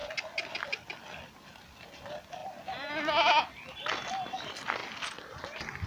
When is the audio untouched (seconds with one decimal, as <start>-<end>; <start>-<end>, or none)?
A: 0.0-5.9